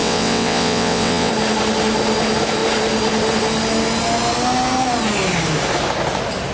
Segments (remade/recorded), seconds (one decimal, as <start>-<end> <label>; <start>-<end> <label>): 0.0-1.3 remade; 1.3-6.5 recorded